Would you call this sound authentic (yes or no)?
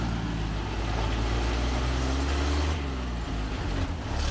yes